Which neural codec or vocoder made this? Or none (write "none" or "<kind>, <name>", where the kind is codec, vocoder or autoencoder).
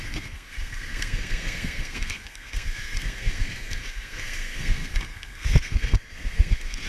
codec, SNAC